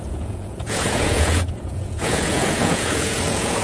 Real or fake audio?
fake